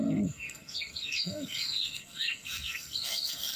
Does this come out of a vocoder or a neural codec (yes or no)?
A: yes